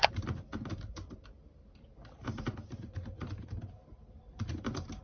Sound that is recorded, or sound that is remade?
remade